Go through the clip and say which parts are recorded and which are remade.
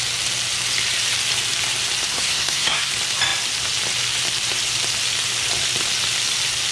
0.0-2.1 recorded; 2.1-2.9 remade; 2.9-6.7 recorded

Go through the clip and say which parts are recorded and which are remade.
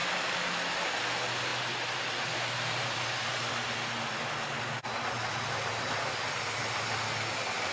0.0-7.7 recorded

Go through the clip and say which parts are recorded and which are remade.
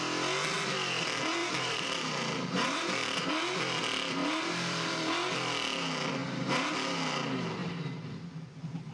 0.0-1.4 recorded; 1.4-3.3 remade; 3.3-4.2 recorded; 4.2-5.0 remade; 5.0-7.6 recorded; 7.6-8.1 remade; 8.1-8.9 recorded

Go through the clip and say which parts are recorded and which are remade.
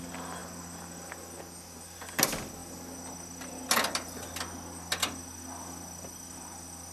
0.0-6.9 recorded